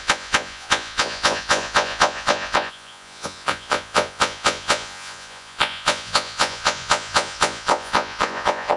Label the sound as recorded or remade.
remade